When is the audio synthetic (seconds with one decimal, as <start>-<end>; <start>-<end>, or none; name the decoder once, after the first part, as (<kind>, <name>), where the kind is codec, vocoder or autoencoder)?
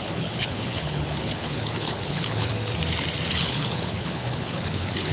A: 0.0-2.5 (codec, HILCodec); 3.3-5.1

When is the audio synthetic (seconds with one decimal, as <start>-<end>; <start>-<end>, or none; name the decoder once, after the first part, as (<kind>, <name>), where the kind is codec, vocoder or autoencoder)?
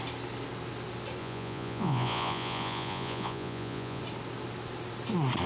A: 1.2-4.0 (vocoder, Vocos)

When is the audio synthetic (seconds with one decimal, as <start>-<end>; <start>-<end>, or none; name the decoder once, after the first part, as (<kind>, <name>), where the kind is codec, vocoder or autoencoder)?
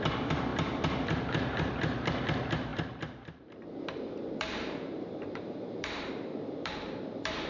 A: 0.0-7.5 (vocoder, BigVGAN v2)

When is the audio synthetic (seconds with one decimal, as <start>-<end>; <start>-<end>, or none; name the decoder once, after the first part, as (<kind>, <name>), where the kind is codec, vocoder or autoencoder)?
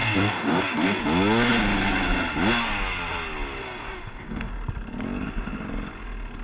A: 0.0-1.0 (codec, DAC); 3.6-4.5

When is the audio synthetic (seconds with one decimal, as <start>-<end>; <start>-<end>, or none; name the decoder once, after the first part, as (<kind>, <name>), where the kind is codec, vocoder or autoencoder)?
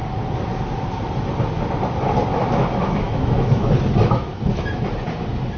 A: 2.3-3.6 (autoencoder, DAC-VAE); 4.3-4.9